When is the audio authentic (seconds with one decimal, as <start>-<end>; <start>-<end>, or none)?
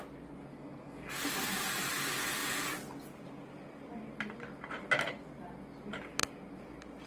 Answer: 0.0-0.5; 1.1-7.1